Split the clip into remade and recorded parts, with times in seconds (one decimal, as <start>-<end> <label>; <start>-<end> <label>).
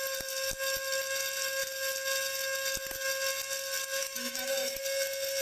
0.0-4.0 recorded; 4.0-4.8 remade; 4.8-5.4 recorded